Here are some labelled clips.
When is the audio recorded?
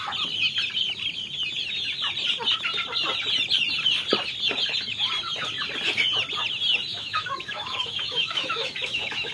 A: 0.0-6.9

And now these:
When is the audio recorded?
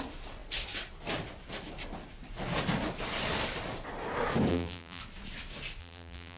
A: 0.0-4.5; 5.0-5.8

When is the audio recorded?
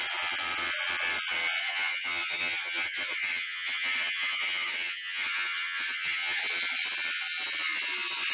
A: 0.0-1.6; 6.4-8.3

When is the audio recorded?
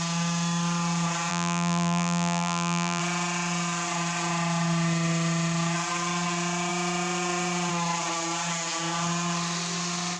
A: 0.0-1.3; 3.0-10.2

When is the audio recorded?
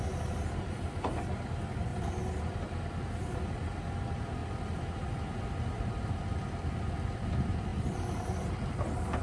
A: 0.0-9.2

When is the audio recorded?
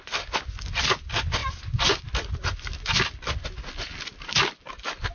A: 0.0-5.1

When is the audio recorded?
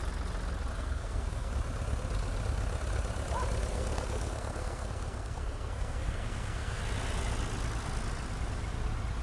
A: 0.0-0.7; 1.5-3.7; 6.8-9.2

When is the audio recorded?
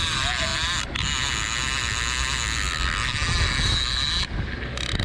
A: 0.0-5.0